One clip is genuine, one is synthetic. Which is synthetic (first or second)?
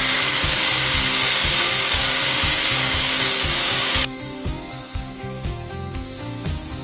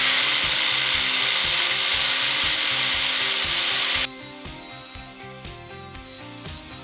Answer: first